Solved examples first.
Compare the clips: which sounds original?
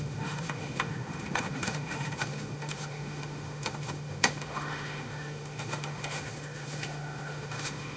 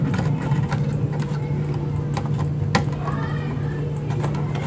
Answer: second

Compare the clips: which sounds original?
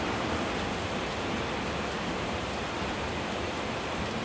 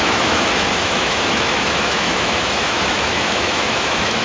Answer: first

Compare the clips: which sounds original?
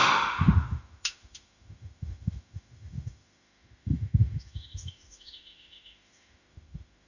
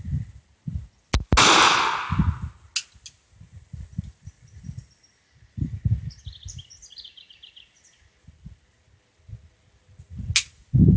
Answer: second